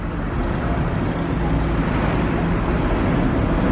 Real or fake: real